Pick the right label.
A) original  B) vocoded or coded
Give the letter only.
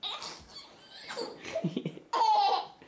A